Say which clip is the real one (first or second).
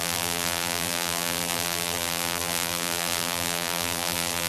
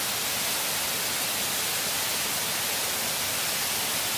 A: second